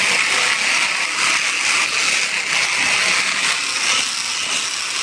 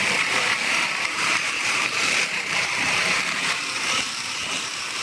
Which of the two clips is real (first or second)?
first